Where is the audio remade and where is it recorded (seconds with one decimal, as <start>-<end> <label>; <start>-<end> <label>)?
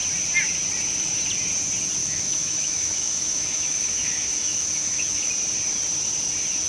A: 0.0-2.0 recorded; 2.0-5.3 remade; 5.3-6.7 recorded